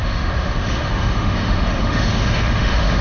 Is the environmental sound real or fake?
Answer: fake